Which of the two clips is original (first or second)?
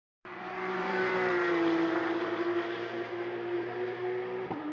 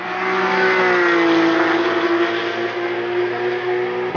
second